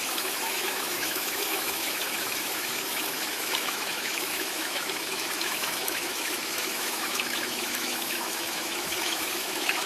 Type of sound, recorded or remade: remade